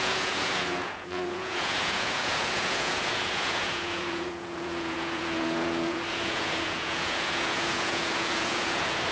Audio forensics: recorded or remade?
remade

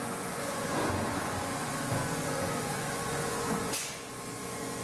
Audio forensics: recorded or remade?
remade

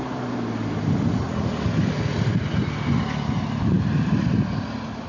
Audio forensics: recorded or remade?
recorded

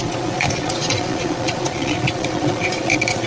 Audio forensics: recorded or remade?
remade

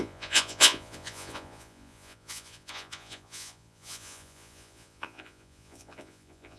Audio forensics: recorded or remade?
remade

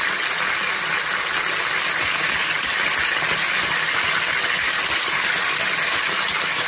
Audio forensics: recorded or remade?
recorded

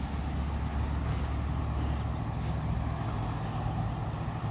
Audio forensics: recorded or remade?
recorded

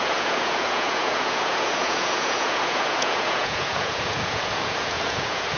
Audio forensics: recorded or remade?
remade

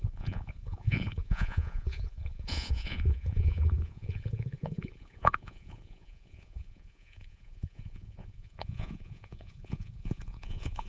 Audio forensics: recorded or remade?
remade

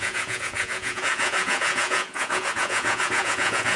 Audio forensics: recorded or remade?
remade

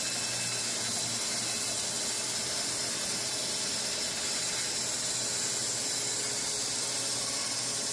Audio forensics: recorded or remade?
recorded